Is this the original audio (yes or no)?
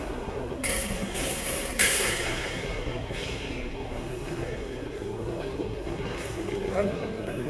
no